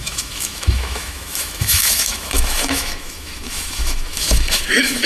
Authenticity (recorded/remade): remade